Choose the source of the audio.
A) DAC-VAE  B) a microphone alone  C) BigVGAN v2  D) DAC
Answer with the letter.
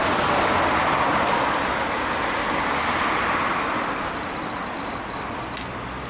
B